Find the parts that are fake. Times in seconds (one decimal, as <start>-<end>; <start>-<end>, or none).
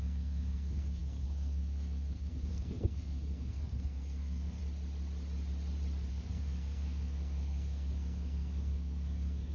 0.0-4.6; 6.1-9.5